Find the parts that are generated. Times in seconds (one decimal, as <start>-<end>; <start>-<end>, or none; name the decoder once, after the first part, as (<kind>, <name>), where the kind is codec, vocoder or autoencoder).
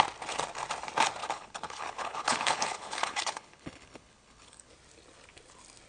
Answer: 1.2-4.7 (codec, HILCodec)